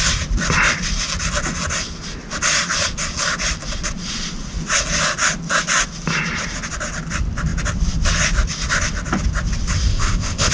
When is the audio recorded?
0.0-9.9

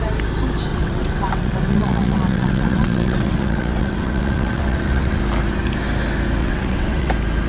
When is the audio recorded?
0.0-0.7; 5.2-6.4; 7.1-7.5